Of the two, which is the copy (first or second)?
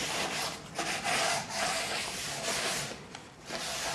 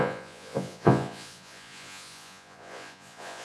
second